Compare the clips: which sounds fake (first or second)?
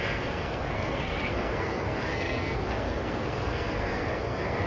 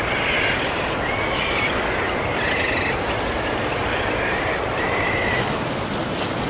first